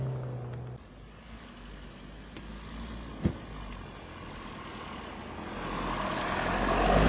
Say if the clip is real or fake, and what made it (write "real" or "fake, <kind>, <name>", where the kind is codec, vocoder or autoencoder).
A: real